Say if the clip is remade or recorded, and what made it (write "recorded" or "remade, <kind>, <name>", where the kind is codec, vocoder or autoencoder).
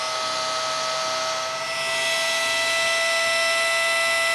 recorded